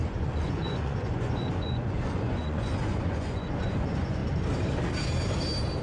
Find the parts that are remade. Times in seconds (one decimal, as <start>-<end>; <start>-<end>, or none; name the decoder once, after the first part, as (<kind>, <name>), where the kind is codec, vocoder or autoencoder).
0.0-4.2 (vocoder, Vocos)